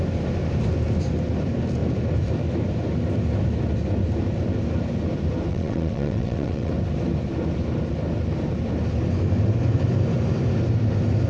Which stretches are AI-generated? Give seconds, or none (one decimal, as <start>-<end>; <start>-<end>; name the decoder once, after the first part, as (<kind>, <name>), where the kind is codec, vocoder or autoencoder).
5.5-6.7 (vocoder, WaveNeXt)